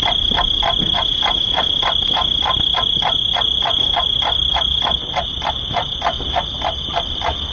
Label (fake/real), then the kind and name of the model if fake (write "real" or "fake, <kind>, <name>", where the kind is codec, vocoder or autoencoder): real